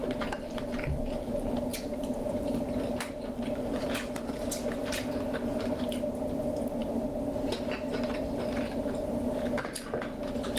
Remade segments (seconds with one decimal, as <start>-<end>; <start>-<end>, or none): 1.7-2.3